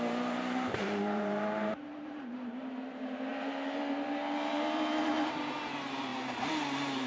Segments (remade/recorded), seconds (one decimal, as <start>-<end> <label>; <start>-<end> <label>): 0.0-7.1 remade